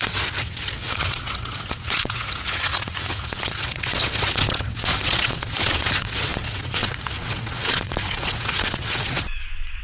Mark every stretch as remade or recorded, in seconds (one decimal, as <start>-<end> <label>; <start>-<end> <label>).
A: 0.0-9.8 remade